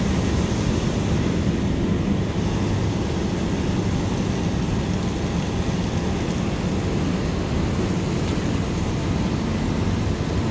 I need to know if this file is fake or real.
real